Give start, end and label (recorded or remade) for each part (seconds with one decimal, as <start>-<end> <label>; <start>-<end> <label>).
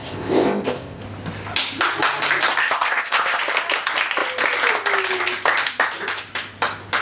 0.0-1.0 remade; 1.0-2.6 recorded; 2.6-3.4 remade; 3.4-7.0 recorded